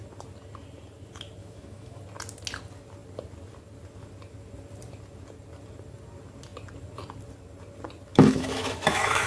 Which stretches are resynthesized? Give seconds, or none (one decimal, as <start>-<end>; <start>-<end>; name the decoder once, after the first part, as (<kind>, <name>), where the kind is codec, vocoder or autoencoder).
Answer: 1.4-2.0 (autoencoder, DAC-VAE); 8.1-9.3